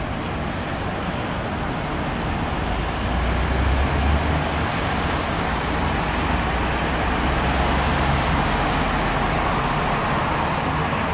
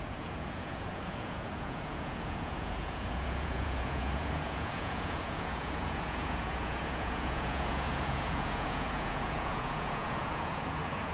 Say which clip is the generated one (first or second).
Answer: second